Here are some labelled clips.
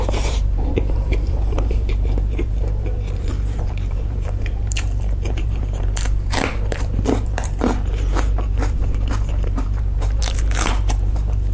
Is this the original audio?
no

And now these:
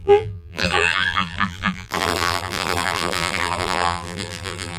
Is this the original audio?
no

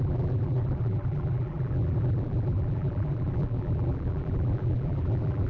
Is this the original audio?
no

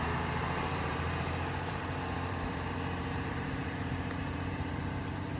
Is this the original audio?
no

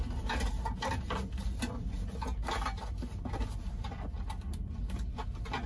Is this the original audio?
yes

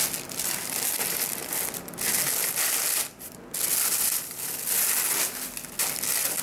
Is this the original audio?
yes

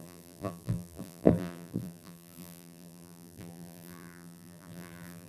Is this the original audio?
no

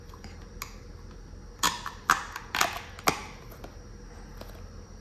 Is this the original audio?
yes